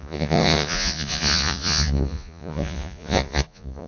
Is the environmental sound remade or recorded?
remade